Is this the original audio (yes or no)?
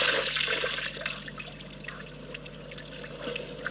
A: yes